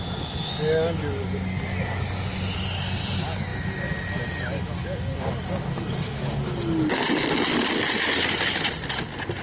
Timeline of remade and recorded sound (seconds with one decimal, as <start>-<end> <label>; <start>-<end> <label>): 0.0-9.4 recorded